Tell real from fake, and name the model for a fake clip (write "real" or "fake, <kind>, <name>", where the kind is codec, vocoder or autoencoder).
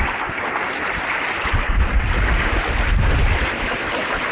real